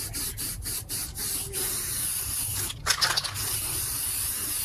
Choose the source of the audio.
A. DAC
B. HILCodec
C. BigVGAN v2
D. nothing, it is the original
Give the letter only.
C